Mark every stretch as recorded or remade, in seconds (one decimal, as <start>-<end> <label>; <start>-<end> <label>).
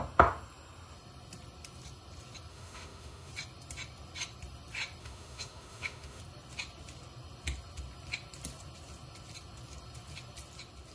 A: 0.0-2.5 recorded; 2.5-3.3 remade; 3.3-5.0 recorded; 5.0-6.2 remade; 6.2-10.9 recorded